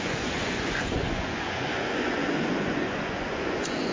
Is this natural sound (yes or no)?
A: no